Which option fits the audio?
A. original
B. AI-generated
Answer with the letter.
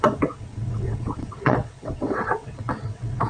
B